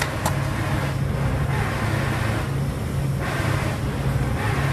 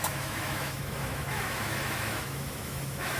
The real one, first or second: first